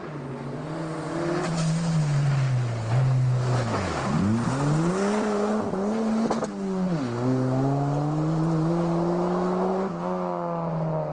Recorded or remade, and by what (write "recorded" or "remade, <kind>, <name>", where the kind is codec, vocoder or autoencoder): recorded